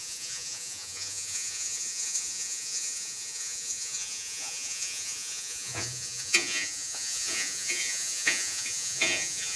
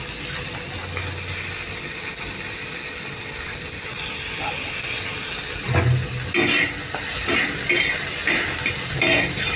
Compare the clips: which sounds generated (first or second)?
first